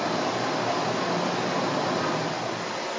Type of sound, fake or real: real